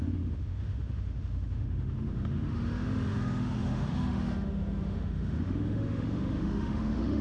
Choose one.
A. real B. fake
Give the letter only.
B